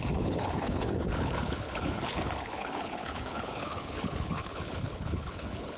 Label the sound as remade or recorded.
remade